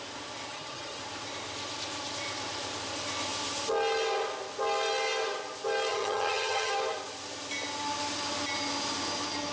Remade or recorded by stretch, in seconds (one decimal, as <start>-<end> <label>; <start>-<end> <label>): 0.0-0.5 recorded; 0.5-1.0 remade; 1.0-5.9 recorded; 5.9-6.7 remade; 6.7-9.5 recorded